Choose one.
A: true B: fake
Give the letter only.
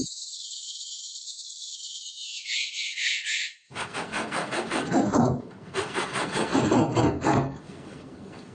B